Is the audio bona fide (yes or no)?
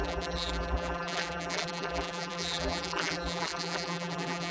no